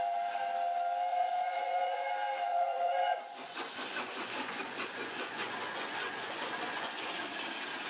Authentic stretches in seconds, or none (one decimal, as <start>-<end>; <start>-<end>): 0.0-1.1; 2.1-2.5; 7.2-7.9